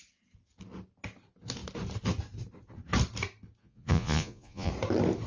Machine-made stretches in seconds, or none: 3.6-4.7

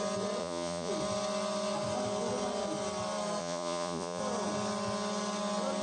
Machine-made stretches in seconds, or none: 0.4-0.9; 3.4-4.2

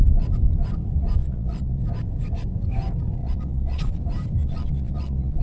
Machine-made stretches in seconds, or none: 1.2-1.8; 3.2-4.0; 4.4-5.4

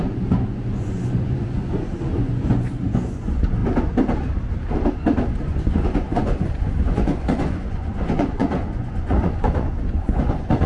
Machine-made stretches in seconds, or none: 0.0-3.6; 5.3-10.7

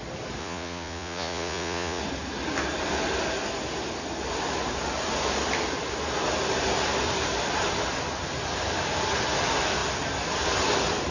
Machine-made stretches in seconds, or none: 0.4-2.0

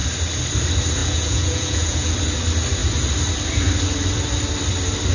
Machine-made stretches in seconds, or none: 1.0-2.1

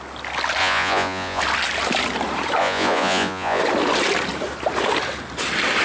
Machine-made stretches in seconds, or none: 0.6-1.4; 2.6-3.6

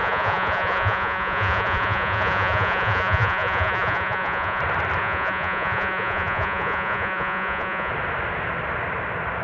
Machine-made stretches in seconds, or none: 0.0-4.6; 5.0-7.9